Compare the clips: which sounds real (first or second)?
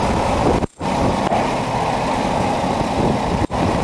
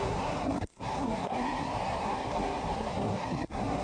first